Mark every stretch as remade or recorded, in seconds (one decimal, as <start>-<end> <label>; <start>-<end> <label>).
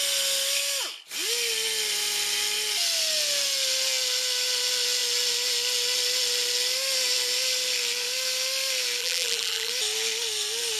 0.0-9.0 recorded; 9.0-9.7 remade; 9.7-10.8 recorded